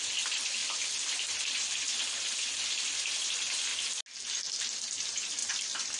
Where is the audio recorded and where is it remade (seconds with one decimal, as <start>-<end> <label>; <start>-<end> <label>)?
0.0-0.6 remade; 0.6-1.4 recorded; 1.4-3.7 remade; 3.7-4.5 recorded; 4.5-6.0 remade